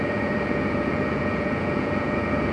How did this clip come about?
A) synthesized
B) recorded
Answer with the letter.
A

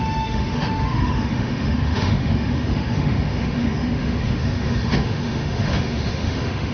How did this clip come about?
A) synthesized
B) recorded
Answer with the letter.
A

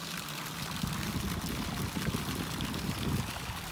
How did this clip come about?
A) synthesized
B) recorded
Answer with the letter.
A